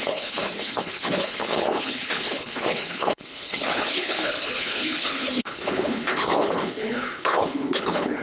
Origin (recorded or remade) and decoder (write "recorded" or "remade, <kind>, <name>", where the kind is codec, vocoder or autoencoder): remade, codec, HILCodec